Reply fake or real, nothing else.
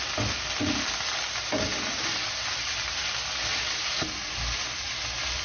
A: real